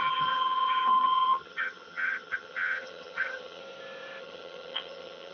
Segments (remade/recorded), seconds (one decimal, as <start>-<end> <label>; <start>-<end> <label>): 0.0-3.6 remade; 3.6-4.2 recorded; 4.2-5.3 remade